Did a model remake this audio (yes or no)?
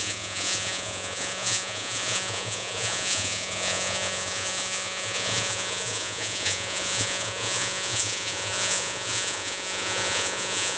yes